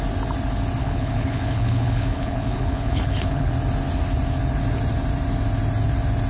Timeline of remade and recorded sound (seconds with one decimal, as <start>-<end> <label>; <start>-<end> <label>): 0.0-0.8 recorded; 0.8-3.5 remade; 3.5-6.3 recorded